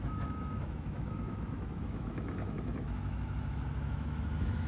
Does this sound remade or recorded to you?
remade